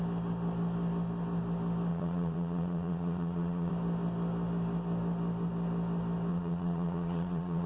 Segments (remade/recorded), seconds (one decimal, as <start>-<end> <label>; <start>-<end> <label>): 0.0-1.9 recorded; 1.9-3.7 remade; 3.7-6.3 recorded; 6.3-7.7 remade